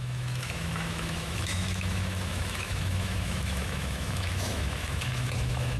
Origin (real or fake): fake